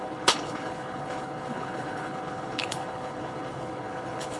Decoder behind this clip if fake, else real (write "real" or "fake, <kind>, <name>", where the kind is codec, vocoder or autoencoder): fake, codec, HILCodec